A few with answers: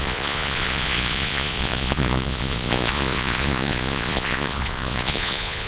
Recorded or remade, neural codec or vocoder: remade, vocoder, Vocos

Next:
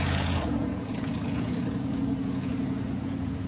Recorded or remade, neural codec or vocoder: remade, vocoder, Vocos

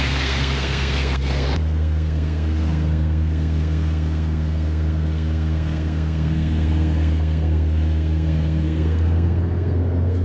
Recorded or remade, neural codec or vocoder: remade, codec, SNAC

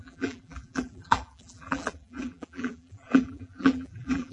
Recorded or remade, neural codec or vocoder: remade, vocoder, BigVGAN v2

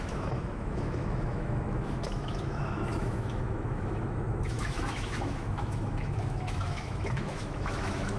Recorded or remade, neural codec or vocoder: remade, autoencoder, DAC-VAE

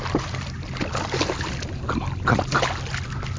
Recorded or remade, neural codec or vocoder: recorded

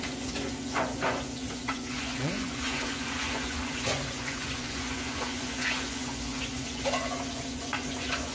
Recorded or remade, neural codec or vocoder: remade, vocoder, Vocos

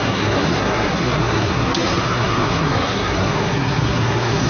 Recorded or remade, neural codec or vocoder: remade, codec, SNAC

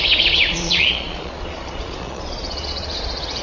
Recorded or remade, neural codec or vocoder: remade, vocoder, Vocos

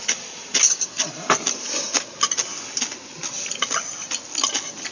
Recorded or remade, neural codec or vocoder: recorded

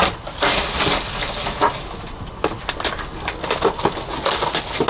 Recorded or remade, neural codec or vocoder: recorded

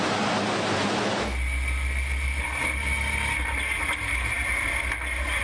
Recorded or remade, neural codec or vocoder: recorded